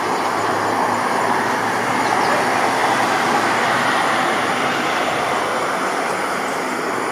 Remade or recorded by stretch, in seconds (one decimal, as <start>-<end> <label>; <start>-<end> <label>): 0.0-7.1 recorded